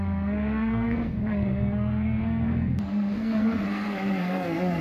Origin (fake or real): fake